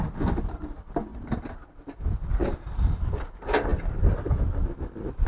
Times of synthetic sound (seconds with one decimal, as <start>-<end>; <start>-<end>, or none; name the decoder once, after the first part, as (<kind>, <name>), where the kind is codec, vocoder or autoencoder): 1.1-1.7 (vocoder, BigVGAN v2); 2.4-3.3